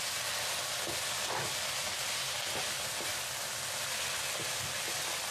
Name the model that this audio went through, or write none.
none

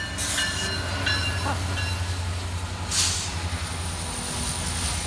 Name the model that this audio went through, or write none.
none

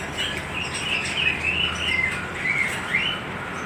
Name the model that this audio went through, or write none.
none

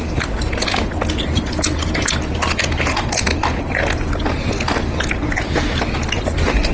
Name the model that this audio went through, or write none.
none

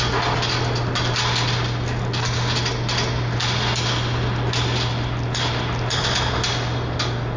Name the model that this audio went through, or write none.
none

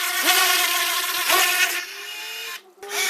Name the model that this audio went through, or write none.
none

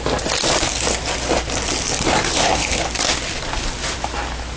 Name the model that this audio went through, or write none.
none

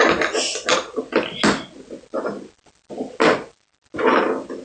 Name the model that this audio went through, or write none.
none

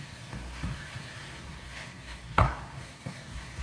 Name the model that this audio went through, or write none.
codec, SNAC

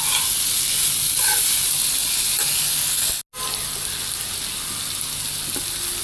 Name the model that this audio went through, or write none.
none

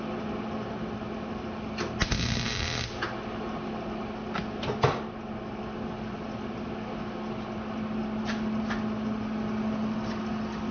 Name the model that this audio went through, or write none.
none